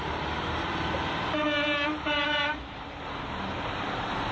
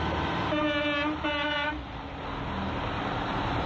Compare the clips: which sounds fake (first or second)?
first